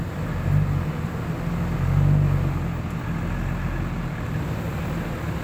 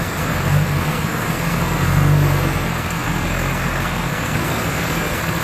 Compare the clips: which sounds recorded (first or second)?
first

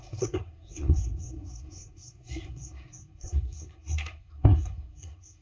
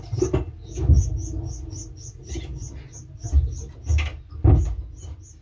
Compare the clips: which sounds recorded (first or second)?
second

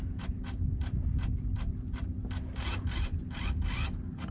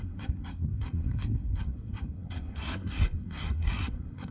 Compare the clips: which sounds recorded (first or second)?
first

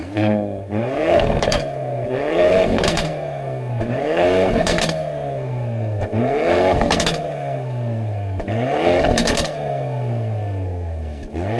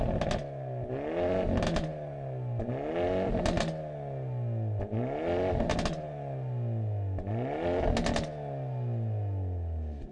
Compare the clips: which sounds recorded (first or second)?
second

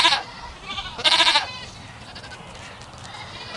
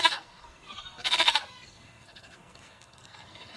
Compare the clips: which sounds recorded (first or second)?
first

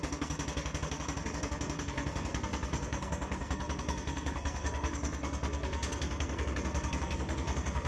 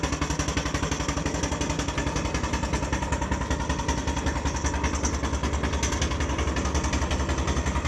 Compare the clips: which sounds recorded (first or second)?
second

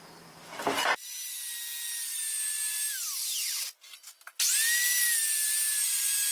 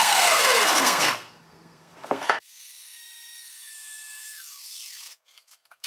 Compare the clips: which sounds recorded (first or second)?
first